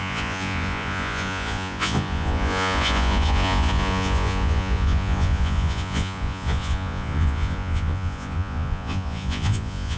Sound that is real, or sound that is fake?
fake